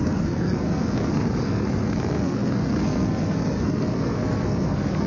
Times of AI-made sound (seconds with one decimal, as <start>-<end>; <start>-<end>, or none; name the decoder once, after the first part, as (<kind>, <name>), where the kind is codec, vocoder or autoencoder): 0.0-5.1 (codec, SNAC)